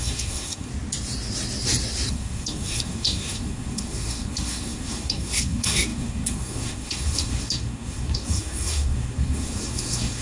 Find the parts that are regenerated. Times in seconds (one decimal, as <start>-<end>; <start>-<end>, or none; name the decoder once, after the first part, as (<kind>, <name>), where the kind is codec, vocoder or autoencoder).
0.0-0.7 (codec, SNAC); 2.1-10.2